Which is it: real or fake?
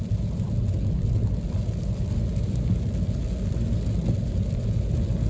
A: real